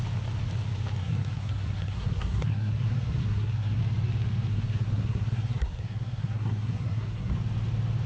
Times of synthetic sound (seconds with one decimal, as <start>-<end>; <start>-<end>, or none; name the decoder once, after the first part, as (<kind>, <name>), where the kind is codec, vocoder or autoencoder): 1.0-3.8 (codec, SNAC); 4.5-7.3